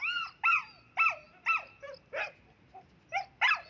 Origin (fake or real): real